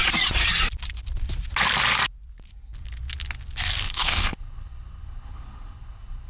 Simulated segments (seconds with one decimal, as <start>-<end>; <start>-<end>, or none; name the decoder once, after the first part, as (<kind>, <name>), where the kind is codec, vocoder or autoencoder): 3.8-6.3 (codec, HILCodec)